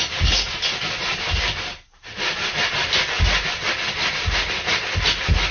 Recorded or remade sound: recorded